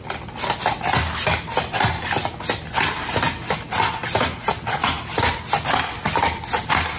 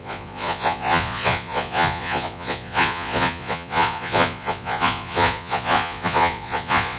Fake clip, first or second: second